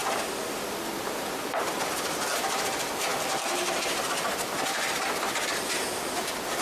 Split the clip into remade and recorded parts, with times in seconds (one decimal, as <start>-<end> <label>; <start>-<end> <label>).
0.0-1.4 recorded; 1.4-3.1 remade; 3.1-4.9 recorded; 4.9-6.6 remade